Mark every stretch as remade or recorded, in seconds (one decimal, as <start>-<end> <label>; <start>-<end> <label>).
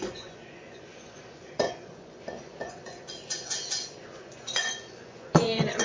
0.0-5.8 remade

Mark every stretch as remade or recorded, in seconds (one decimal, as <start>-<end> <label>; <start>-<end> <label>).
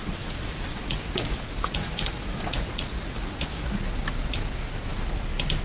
0.0-3.4 remade; 3.4-5.6 recorded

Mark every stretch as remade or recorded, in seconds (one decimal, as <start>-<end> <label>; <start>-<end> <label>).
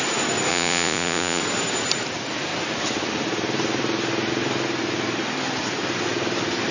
0.0-0.5 recorded; 0.5-1.4 remade; 1.4-6.7 recorded